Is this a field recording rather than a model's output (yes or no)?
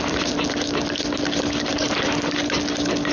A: yes